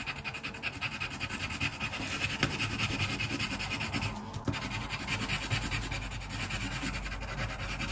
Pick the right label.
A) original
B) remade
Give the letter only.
A